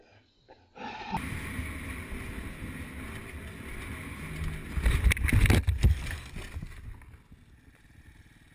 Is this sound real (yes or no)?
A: yes